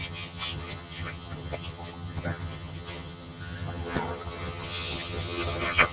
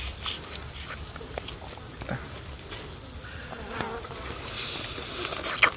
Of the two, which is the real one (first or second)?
second